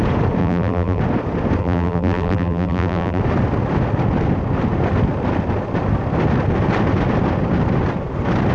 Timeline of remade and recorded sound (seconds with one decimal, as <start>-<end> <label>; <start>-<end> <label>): 0.0-0.4 recorded; 0.4-1.0 remade; 1.0-1.6 recorded; 1.6-3.2 remade; 3.2-8.5 recorded